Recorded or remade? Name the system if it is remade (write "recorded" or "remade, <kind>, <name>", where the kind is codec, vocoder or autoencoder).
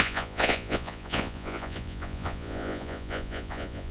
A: remade, vocoder, Vocos